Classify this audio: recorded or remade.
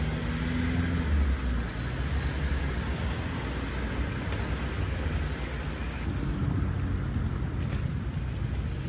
recorded